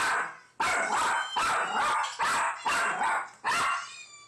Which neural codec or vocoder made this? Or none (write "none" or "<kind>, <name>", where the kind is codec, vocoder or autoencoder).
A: none